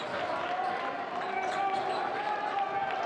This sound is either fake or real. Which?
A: real